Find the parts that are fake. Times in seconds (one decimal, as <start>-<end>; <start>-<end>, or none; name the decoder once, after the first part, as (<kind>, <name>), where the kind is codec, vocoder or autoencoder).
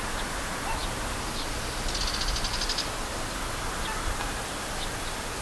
none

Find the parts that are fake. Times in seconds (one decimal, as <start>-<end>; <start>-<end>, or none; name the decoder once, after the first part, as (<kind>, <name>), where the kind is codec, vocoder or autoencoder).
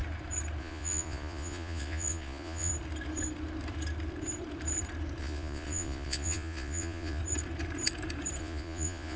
0.6-2.7 (vocoder, Vocos); 5.2-7.2; 8.4-9.2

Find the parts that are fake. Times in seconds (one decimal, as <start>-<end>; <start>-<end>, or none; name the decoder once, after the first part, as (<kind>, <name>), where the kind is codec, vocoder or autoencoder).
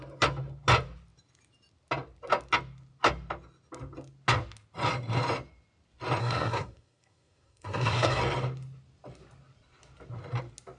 6.2-8.2 (codec, SNAC)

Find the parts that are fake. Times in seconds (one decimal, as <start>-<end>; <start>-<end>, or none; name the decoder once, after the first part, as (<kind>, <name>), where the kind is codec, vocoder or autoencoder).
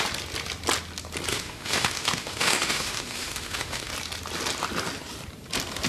1.3-3.9 (autoencoder, DAC-VAE)